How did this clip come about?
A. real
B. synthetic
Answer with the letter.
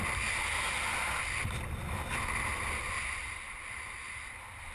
A